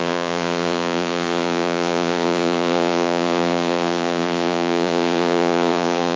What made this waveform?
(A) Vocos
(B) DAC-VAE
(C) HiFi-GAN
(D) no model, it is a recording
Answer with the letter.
A